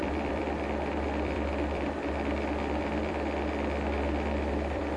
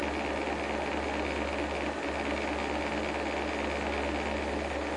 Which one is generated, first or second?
first